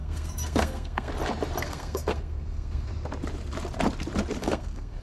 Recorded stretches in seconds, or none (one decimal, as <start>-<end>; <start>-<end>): 1.1-1.6; 2.9-4.4

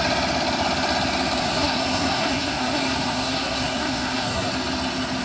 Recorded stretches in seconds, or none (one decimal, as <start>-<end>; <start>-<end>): 0.0-1.4; 4.5-5.2